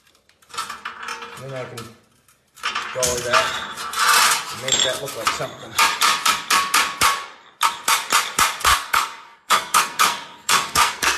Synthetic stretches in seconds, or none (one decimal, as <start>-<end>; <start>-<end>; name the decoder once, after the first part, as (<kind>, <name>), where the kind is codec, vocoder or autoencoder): 8.7-11.2 (codec, SNAC)

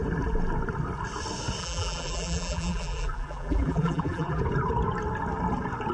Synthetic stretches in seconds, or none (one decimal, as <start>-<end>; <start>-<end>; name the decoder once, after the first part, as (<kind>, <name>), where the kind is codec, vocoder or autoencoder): 1.6-4.4 (vocoder, BigVGAN v2)